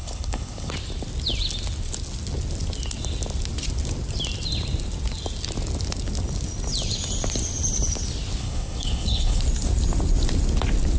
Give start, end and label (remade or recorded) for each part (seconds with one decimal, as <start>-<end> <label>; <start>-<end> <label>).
0.0-0.7 remade; 0.7-8.4 recorded; 8.4-9.4 remade; 9.4-11.0 recorded